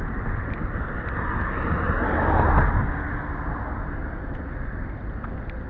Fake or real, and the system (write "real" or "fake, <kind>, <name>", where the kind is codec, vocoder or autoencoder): real